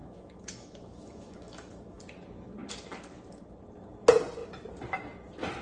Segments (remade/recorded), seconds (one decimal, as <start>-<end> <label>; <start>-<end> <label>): 0.0-2.0 remade; 2.0-5.6 recorded